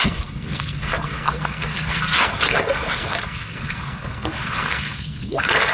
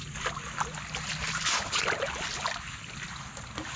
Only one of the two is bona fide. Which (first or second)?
second